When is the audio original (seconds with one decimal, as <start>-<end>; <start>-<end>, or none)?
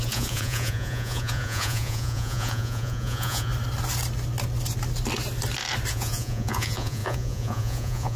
3.5-5.9